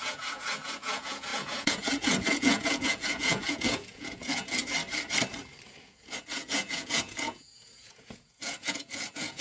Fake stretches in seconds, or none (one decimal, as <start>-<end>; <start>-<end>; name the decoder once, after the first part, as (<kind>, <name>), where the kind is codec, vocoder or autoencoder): 0.0-4.6 (vocoder, Vocos); 5.8-9.4